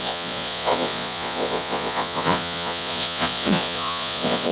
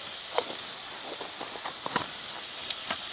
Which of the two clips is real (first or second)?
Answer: second